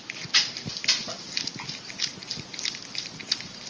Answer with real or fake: real